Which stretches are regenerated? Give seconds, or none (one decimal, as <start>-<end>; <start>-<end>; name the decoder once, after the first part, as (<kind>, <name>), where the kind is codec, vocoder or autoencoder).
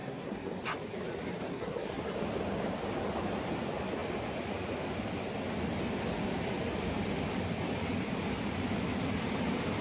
0.0-0.5 (codec, SNAC); 1.5-2.1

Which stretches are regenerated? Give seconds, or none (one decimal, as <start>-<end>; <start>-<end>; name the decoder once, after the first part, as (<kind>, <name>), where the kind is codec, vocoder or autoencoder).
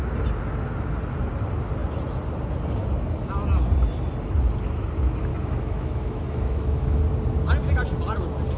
5.3-7.0 (autoencoder, DAC-VAE)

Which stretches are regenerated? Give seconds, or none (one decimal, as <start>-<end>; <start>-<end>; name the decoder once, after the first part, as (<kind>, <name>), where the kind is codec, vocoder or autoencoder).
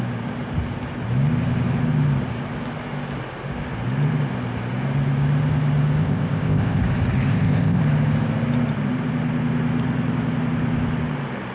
6.0-6.8 (codec, ZipCodec); 7.3-7.8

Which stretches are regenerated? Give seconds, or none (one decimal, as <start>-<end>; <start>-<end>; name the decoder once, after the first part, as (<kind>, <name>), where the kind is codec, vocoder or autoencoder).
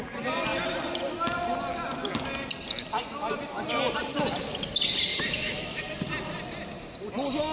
5.1-5.8 (autoencoder, DAC-VAE)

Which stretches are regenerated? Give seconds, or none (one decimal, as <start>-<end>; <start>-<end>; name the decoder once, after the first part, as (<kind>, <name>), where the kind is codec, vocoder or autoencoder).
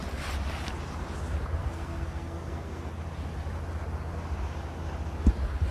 1.6-2.9 (codec, SNAC)